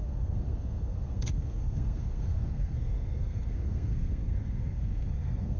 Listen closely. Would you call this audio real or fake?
fake